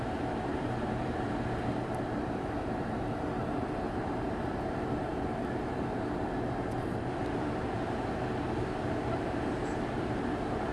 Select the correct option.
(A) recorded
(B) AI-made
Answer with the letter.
B